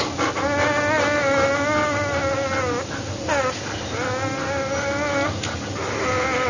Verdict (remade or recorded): recorded